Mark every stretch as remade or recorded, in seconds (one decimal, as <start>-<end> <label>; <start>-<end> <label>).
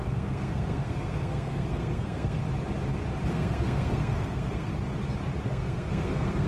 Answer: 0.0-2.4 remade; 2.4-3.3 recorded; 3.3-4.7 remade; 4.7-5.4 recorded; 5.4-6.5 remade